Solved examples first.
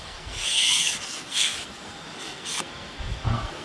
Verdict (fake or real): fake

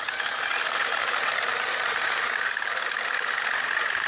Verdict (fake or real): real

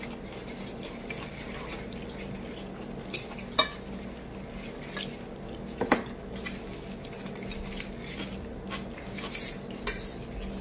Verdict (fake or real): real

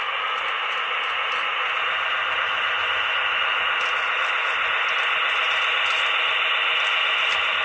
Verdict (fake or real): real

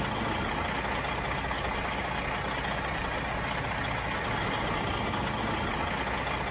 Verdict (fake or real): real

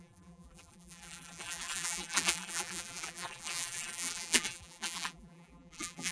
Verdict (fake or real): fake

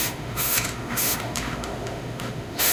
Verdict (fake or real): fake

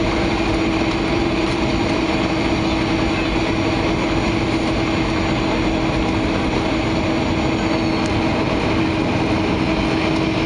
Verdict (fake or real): real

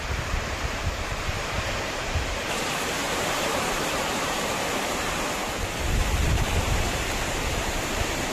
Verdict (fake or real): fake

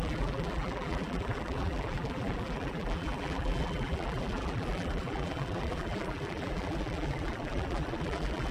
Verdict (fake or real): fake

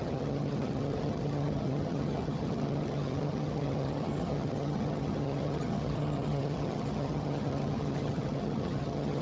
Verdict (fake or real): fake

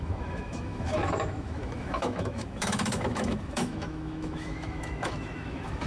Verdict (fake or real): fake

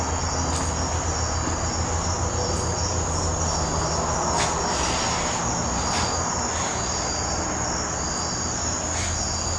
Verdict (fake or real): real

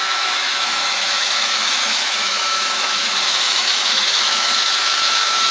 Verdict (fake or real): fake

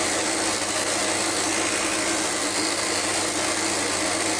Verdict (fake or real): real